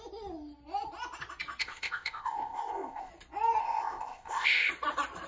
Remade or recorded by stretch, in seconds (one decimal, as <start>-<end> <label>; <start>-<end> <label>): 0.0-1.6 recorded; 1.6-3.1 remade; 3.1-3.6 recorded; 3.6-4.7 remade; 4.7-5.3 recorded